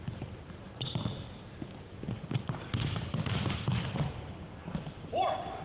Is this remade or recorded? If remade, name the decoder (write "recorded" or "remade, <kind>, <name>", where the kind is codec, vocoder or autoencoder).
recorded